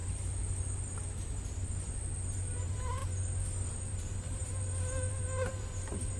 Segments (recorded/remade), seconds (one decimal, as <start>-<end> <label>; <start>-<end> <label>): 0.0-2.3 recorded; 2.3-3.0 remade; 3.0-3.9 recorded; 3.9-6.2 remade